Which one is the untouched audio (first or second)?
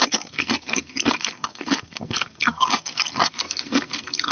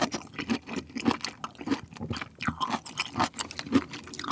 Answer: second